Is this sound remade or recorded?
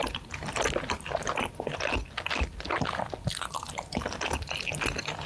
recorded